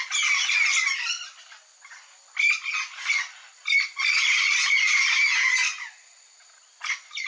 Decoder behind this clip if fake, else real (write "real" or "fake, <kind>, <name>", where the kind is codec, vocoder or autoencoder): real